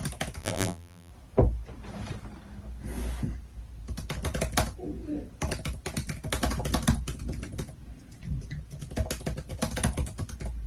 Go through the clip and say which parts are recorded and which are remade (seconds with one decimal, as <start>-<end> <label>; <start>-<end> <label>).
0.0-0.4 recorded; 0.4-1.1 remade; 1.1-10.7 recorded